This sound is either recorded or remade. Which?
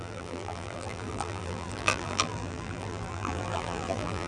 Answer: remade